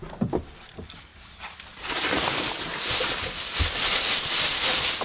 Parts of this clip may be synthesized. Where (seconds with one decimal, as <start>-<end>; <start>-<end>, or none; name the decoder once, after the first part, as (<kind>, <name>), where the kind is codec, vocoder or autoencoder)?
none